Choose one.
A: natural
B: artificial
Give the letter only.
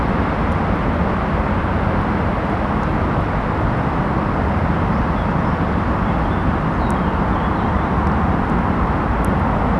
A